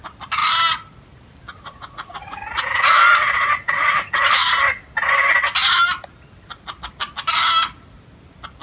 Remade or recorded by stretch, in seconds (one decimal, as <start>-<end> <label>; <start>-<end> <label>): 0.0-1.5 recorded; 1.5-4.5 remade; 4.5-8.6 recorded